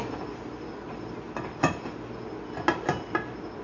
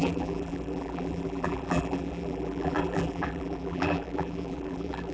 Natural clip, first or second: first